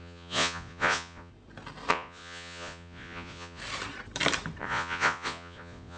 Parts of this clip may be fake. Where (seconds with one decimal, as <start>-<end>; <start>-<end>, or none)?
0.0-1.3; 1.9-3.6; 4.6-6.0